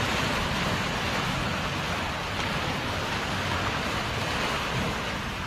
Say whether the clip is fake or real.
real